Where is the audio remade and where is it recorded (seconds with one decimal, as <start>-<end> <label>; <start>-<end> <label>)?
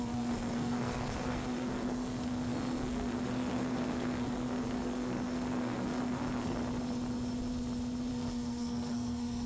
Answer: 0.0-6.6 remade; 6.6-8.1 recorded; 8.1-9.5 remade